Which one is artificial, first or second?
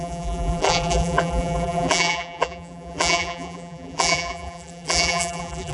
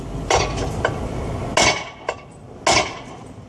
first